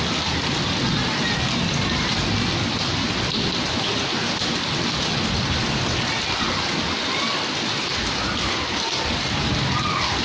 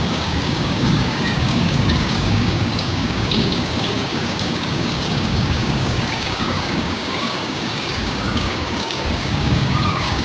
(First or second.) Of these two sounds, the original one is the first